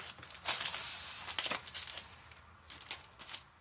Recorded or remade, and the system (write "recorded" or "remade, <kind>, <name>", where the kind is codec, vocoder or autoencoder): recorded